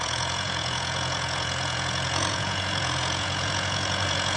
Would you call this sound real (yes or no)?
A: no